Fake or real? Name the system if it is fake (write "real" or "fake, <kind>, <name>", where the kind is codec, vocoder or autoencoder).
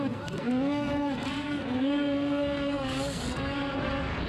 fake, codec, SNAC